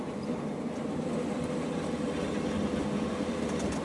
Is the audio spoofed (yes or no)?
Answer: no